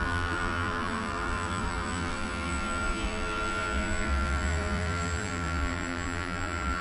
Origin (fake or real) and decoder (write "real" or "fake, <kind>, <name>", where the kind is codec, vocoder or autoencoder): fake, vocoder, BigVGAN v2